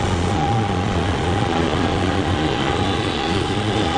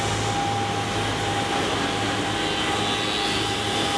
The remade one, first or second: first